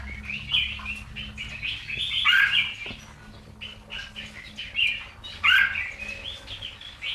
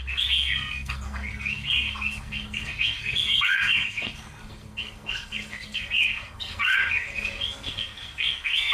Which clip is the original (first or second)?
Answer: first